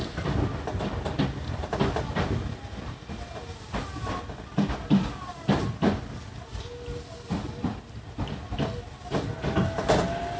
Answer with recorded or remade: recorded